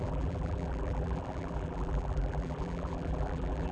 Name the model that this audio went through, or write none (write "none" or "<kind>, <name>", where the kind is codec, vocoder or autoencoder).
vocoder, BigVGAN v2